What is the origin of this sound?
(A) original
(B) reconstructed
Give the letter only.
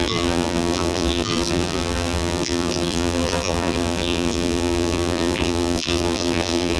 B